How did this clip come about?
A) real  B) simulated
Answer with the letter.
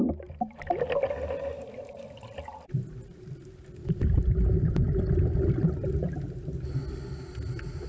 A